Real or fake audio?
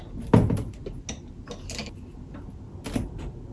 real